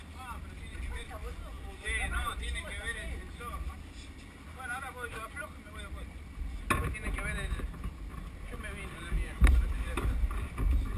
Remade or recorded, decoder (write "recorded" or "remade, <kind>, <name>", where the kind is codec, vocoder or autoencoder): recorded